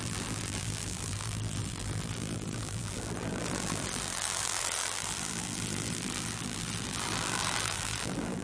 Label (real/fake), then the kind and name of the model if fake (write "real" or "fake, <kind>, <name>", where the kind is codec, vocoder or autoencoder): fake, vocoder, BigVGAN v2